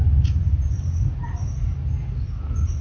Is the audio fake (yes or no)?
no